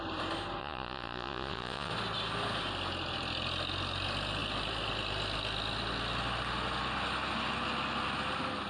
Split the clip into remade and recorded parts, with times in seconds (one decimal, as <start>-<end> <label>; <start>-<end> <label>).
0.0-0.6 recorded; 0.6-1.9 remade; 1.9-8.7 recorded